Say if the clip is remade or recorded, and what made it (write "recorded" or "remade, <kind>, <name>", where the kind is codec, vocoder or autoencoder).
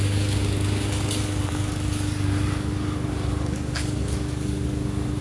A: remade, codec, DAC